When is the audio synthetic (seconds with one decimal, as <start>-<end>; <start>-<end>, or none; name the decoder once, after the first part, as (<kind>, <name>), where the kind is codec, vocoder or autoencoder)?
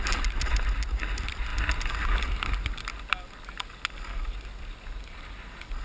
none